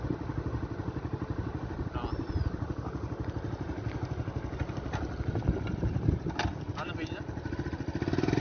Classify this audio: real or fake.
real